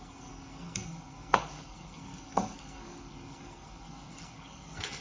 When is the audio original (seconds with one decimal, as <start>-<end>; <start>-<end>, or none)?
none